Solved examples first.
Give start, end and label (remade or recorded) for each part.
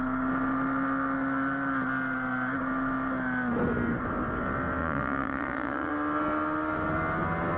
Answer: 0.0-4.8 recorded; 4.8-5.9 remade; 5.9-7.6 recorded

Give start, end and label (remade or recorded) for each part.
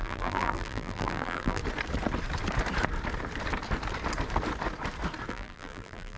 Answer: 0.0-1.6 remade; 1.6-5.3 recorded; 5.3-6.2 remade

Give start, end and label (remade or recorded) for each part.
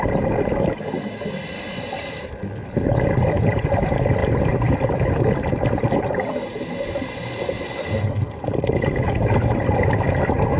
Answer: 0.0-4.2 recorded; 4.2-6.4 remade; 6.4-10.6 recorded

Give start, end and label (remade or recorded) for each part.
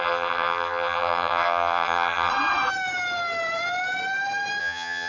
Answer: 0.0-2.3 remade; 2.3-4.6 recorded; 4.6-5.1 remade